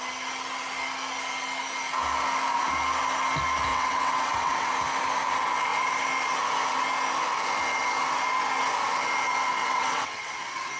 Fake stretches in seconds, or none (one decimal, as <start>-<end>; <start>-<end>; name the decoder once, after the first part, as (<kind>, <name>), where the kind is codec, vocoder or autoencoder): 3.7-4.7 (vocoder, WaveNeXt); 9.6-10.3